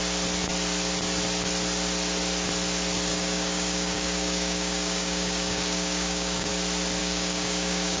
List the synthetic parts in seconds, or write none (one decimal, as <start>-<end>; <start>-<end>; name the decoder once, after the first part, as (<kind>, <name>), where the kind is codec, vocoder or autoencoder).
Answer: 3.1-6.5 (codec, DAC); 7.0-8.0